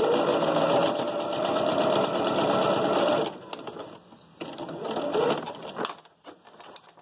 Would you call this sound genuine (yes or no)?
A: yes